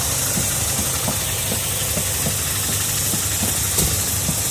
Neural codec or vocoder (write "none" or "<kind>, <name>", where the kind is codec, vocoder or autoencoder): none